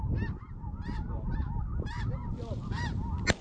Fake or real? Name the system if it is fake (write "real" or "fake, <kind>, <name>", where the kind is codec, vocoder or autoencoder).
real